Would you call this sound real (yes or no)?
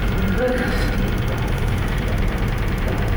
no